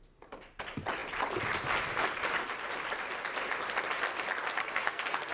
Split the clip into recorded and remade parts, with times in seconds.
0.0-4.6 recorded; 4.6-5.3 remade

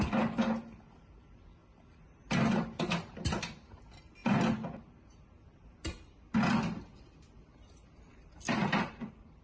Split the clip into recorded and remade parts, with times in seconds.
0.0-9.4 recorded

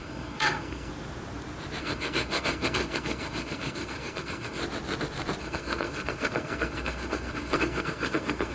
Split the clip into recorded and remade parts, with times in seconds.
0.0-0.9 remade; 0.9-1.8 recorded; 1.8-4.6 remade; 4.6-5.4 recorded; 5.4-8.5 remade

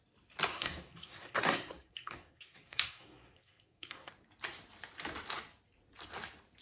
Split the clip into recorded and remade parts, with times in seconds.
0.0-0.5 recorded; 0.5-4.1 remade; 4.1-6.6 recorded

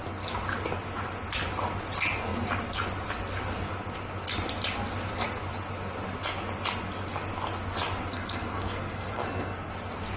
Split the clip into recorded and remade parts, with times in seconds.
0.0-8.1 recorded; 8.1-9.7 remade; 9.7-10.2 recorded

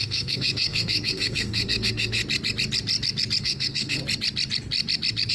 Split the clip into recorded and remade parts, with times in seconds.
0.0-2.2 remade; 2.2-3.4 recorded; 3.4-4.0 remade; 4.0-5.3 recorded

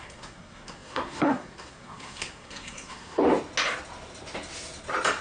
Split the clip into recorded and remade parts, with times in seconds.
0.0-3.2 remade; 3.2-5.2 recorded

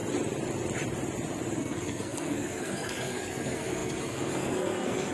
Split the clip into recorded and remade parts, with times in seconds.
0.0-1.6 recorded; 1.6-5.1 remade